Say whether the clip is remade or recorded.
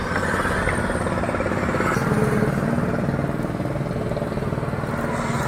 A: recorded